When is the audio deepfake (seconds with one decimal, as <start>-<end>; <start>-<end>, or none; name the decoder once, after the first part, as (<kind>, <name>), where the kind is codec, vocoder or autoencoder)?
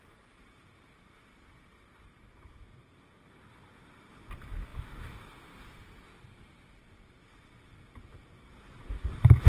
none